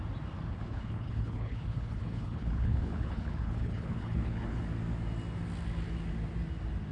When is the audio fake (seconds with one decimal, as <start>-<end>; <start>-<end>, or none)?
0.5-4.6